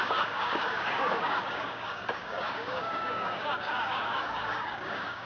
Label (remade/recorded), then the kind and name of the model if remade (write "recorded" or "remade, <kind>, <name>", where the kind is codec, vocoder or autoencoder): remade, codec, DAC